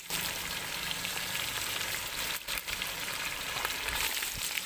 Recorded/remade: remade